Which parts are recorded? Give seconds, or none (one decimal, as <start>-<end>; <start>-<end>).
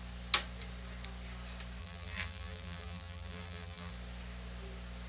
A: 0.0-1.8; 3.9-5.1